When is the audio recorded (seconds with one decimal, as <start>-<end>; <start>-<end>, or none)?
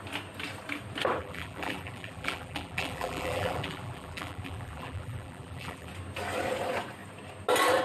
0.0-1.2; 5.9-7.8